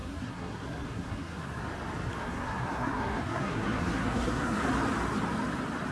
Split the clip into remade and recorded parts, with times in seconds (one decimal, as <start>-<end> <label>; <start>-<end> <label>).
0.0-1.6 remade; 1.6-2.2 recorded; 2.2-4.6 remade; 4.6-5.9 recorded